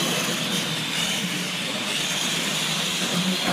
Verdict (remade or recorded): remade